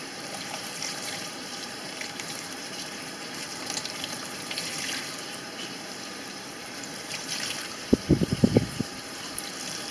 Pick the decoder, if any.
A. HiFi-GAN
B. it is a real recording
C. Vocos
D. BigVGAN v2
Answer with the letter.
D